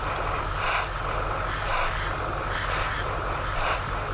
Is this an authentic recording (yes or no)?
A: no